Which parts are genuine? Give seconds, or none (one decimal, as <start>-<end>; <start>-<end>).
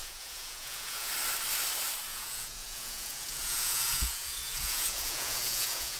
1.1-2.1